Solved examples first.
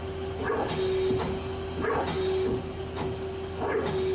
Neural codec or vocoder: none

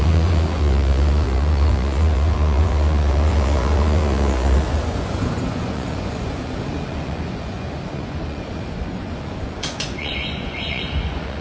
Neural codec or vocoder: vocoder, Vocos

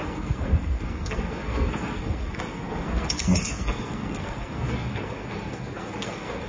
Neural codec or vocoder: codec, SNAC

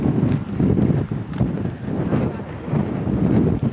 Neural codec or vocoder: none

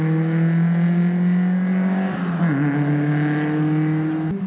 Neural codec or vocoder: none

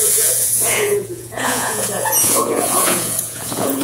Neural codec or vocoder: vocoder, Vocos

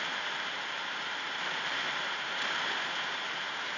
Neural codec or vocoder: vocoder, BigVGAN v2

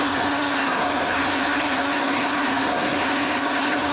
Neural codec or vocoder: codec, SNAC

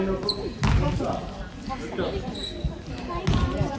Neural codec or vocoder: none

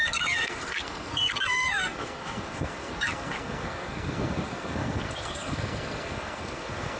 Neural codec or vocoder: codec, SNAC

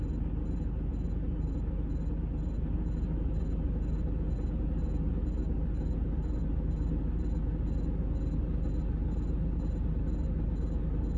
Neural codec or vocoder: none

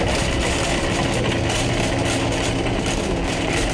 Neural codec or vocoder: none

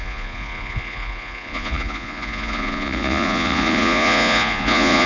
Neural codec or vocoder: vocoder, Vocos